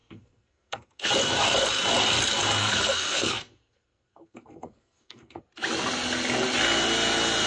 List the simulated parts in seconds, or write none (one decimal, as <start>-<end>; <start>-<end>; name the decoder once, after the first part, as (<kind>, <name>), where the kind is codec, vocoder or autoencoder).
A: 0.0-1.1 (codec, SNAC); 2.6-5.4